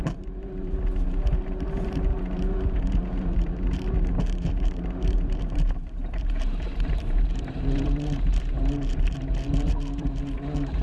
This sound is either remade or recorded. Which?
remade